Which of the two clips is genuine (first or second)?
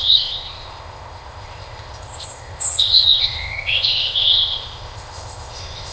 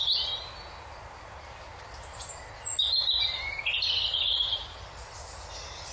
second